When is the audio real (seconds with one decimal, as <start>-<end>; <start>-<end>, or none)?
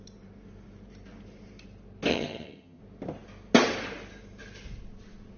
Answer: 0.0-2.1; 2.8-5.4